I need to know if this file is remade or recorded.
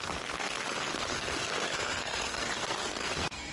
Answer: remade